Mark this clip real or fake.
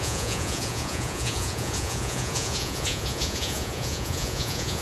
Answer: fake